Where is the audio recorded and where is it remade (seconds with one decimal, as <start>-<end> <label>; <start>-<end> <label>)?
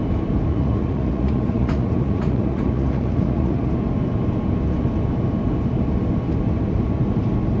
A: 0.0-0.5 recorded; 0.5-3.7 remade; 3.7-7.6 recorded